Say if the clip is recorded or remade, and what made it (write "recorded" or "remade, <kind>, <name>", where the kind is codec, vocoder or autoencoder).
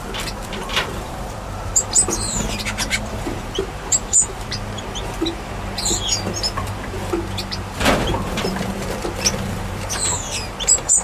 remade, vocoder, BigVGAN v2